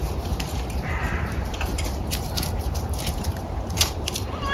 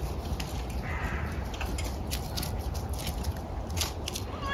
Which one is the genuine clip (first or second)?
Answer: second